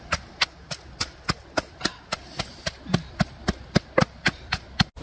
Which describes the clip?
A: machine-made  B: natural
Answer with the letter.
B